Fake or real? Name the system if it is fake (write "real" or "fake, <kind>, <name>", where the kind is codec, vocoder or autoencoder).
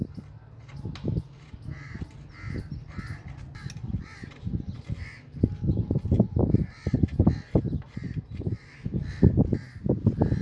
real